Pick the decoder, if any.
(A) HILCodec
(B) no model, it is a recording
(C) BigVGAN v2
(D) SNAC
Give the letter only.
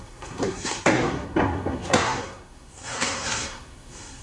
D